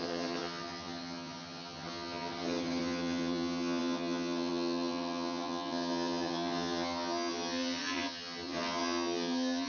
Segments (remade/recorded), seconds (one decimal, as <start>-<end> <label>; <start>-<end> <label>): 0.0-9.7 remade